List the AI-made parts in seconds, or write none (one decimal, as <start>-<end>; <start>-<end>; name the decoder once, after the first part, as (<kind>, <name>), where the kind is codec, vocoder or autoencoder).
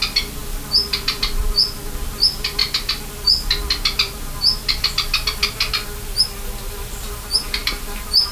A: none